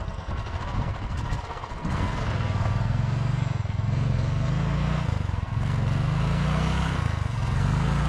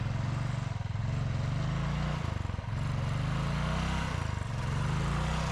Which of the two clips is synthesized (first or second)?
first